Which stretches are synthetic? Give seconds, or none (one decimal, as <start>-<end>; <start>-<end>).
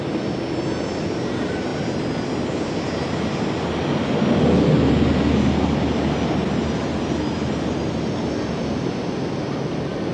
none